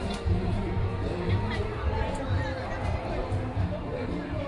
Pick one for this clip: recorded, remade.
remade